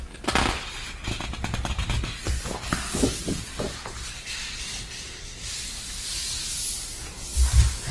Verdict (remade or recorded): recorded